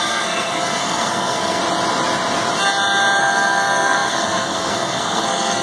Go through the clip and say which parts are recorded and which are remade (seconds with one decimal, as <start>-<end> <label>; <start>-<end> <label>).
0.0-1.6 remade; 1.6-3.2 recorded; 3.2-5.6 remade